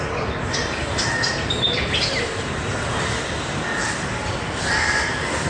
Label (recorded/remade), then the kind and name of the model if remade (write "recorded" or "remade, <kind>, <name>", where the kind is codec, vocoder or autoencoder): recorded